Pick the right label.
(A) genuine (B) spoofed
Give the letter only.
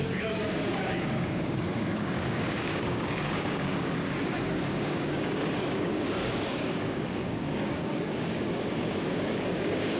B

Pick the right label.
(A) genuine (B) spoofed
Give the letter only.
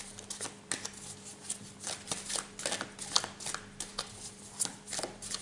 A